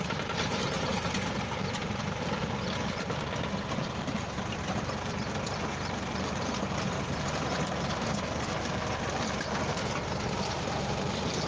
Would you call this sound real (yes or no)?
no